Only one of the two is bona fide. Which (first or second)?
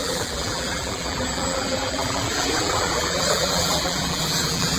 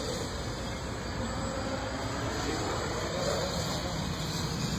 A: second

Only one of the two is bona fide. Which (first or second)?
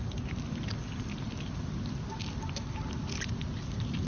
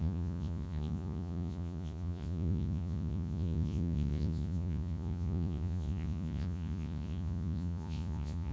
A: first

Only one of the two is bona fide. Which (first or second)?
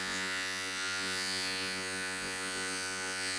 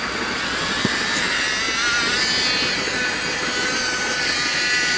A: second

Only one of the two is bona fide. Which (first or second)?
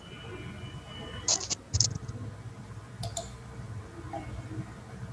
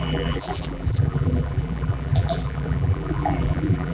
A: first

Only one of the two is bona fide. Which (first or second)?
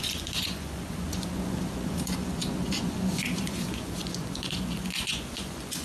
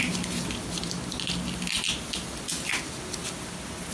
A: second